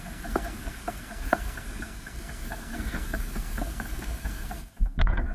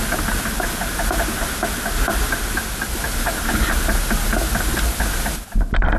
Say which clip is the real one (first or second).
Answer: second